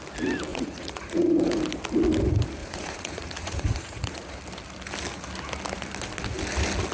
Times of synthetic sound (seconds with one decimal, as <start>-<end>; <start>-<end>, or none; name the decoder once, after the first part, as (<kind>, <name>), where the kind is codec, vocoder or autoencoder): 0.5-1.6 (vocoder, Vocos); 2.6-4.4